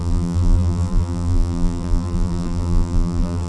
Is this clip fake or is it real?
fake